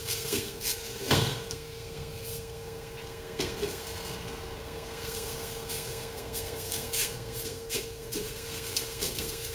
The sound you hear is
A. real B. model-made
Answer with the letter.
B